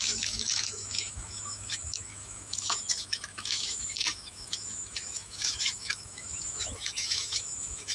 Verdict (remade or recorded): remade